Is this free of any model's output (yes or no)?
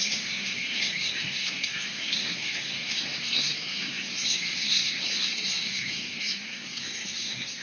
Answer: no